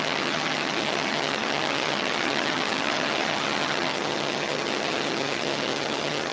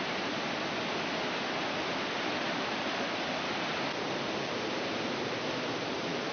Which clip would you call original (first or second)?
second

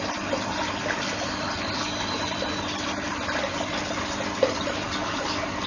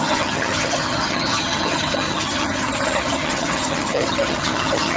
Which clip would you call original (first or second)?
first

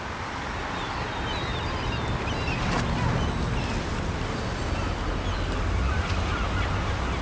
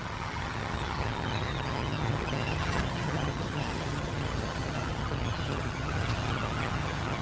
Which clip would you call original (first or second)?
first